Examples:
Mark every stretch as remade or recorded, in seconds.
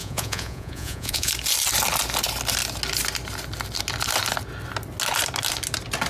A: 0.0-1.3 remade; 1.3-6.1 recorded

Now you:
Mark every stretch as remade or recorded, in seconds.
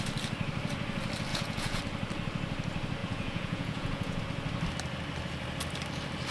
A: 0.0-1.3 recorded; 1.3-1.8 remade; 1.8-3.0 recorded; 3.0-4.2 remade; 4.2-6.3 recorded